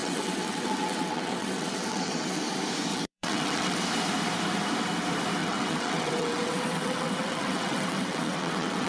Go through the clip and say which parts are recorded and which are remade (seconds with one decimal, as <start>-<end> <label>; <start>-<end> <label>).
0.0-2.4 remade; 2.4-2.9 recorded; 2.9-3.8 remade; 3.8-5.4 recorded; 5.4-8.9 remade